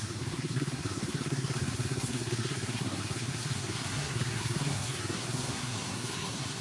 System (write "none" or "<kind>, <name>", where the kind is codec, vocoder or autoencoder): codec, SNAC